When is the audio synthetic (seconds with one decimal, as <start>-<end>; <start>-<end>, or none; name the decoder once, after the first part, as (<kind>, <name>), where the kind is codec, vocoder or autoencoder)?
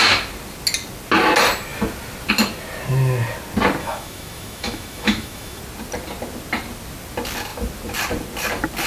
3.8-5.6 (autoencoder, DAC-VAE)